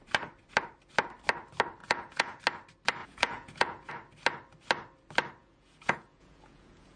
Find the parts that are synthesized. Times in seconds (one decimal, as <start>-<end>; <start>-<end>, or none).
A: 1.8-2.4; 3.0-3.9; 5.4-7.0